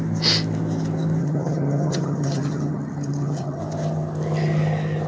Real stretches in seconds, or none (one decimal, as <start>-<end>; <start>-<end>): 0.0-1.2; 3.6-5.1